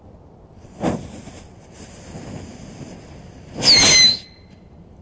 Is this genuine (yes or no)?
yes